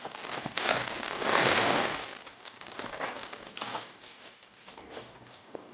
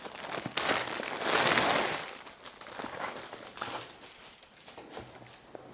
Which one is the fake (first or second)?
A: first